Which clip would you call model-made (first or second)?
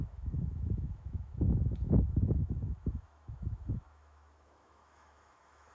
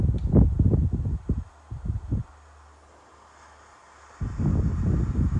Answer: first